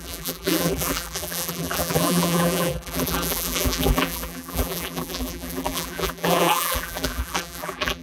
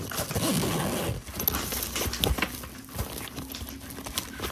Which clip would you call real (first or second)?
second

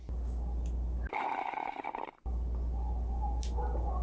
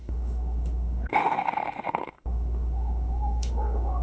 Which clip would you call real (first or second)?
first